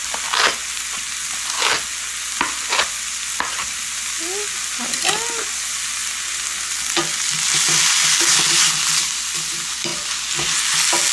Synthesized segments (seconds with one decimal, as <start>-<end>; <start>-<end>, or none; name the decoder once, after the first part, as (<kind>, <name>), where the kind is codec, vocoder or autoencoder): none